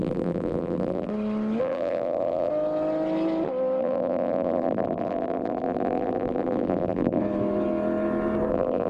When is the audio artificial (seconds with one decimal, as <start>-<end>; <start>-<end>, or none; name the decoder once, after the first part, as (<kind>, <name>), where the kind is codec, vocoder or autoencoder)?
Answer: 0.0-1.1 (vocoder, BigVGAN v2); 1.6-2.5; 3.8-7.2; 8.5-8.9